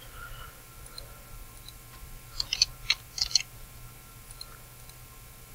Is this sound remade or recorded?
recorded